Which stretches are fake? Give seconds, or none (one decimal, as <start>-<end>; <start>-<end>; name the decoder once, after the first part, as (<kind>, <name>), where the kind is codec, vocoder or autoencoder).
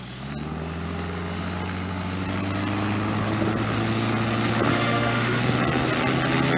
4.7-5.4 (autoencoder, DAC-VAE)